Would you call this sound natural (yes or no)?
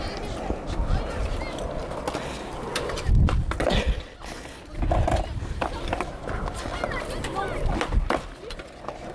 yes